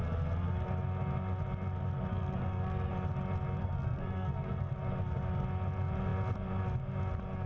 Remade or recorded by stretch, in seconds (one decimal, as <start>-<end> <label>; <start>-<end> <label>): 0.0-2.1 recorded; 2.1-2.9 remade; 2.9-3.6 recorded; 3.6-4.7 remade; 4.7-7.5 recorded